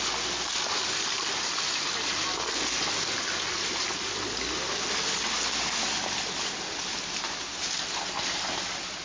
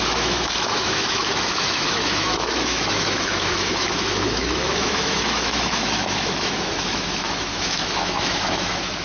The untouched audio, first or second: first